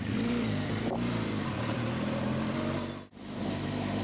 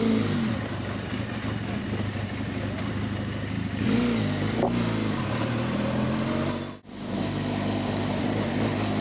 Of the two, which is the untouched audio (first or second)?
second